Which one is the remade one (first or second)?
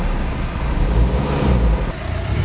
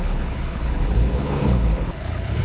second